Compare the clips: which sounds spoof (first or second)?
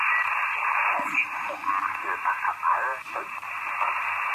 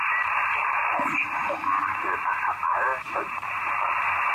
second